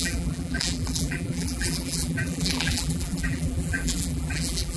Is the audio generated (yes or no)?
yes